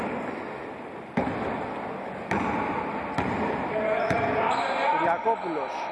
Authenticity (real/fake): real